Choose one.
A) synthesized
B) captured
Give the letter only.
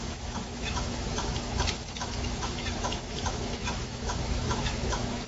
A